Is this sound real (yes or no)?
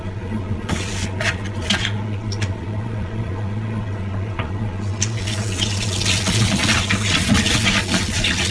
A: no